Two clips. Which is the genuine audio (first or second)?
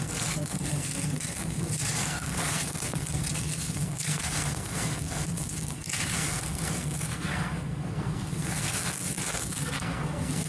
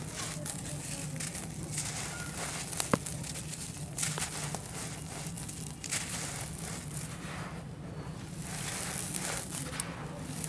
second